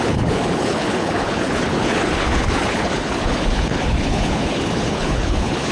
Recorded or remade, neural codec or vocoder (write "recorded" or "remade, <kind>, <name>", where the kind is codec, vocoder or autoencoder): remade, codec, HILCodec